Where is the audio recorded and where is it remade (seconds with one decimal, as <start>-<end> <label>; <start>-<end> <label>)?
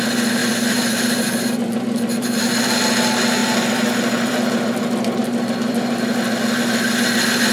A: 0.0-0.4 recorded; 0.4-2.7 remade; 2.7-3.4 recorded; 3.4-4.8 remade; 4.8-5.2 recorded; 5.2-6.1 remade; 6.1-7.5 recorded